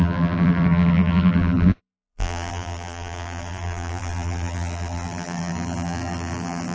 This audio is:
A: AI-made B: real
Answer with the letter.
A